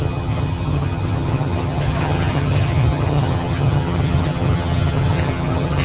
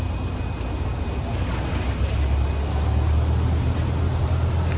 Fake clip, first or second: first